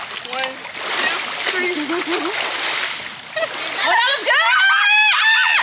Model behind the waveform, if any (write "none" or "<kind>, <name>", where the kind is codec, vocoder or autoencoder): none